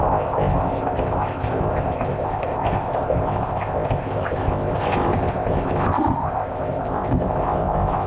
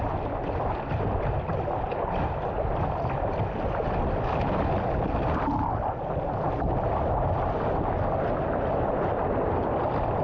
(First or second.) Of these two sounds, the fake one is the first